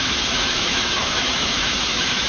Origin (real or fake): fake